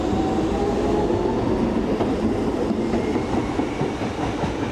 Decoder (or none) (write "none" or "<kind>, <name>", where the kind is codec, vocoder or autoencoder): none